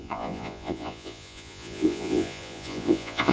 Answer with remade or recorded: remade